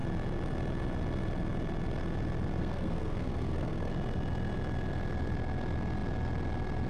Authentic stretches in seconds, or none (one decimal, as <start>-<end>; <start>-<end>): 0.0-2.6; 3.9-6.9